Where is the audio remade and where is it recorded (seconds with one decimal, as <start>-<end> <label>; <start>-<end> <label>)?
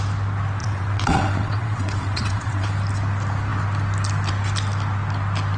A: 0.0-0.6 recorded; 0.6-2.7 remade; 2.7-5.6 recorded